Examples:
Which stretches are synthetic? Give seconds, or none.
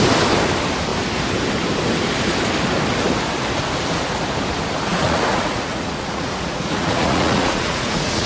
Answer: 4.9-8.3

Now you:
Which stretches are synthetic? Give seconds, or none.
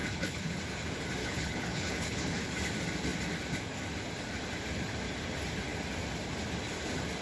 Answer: 0.0-0.6; 1.2-2.5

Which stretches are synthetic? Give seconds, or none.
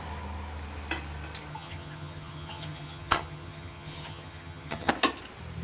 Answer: 1.5-4.9